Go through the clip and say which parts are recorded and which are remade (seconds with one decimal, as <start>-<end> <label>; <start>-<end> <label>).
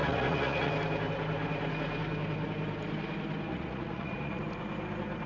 0.0-0.7 remade; 0.7-3.5 recorded; 3.5-4.4 remade; 4.4-5.3 recorded